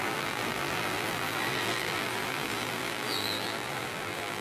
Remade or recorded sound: remade